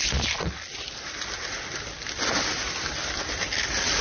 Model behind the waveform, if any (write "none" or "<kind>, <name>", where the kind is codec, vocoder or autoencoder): none